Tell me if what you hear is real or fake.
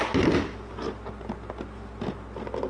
real